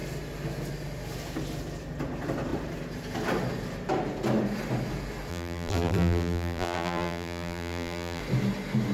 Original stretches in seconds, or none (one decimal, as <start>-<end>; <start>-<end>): 0.0-5.3; 8.2-8.9

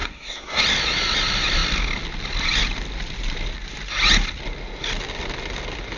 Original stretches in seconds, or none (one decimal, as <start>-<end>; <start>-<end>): 0.6-6.0

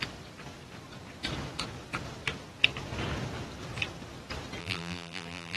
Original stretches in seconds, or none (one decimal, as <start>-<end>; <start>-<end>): 0.0-4.6

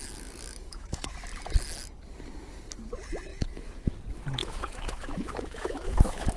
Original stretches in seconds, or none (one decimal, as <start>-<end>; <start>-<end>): 0.0-0.6; 1.1-3.3; 3.9-4.4

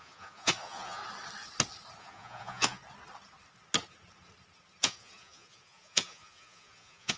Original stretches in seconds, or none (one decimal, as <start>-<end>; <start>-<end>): 1.0-2.0; 2.8-4.8

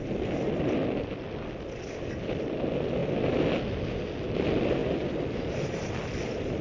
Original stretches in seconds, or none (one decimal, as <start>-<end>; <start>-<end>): 0.0-6.6